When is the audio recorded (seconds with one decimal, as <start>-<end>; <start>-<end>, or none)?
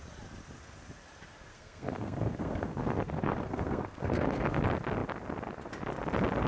0.0-1.5; 4.6-6.5